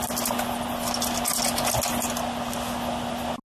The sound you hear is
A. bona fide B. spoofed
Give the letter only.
A